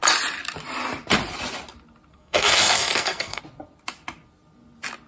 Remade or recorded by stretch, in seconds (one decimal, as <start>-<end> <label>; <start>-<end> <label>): 0.0-2.1 recorded; 2.1-3.4 remade; 3.4-5.1 recorded